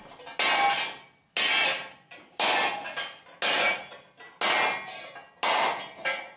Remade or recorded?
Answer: recorded